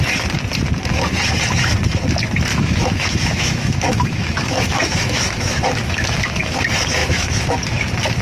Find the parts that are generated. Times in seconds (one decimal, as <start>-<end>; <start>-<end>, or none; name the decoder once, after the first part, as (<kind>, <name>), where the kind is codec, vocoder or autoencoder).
2.5-6.6 (autoencoder, DAC-VAE); 7.0-7.6